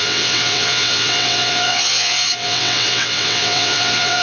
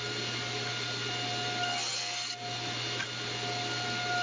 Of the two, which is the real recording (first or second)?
second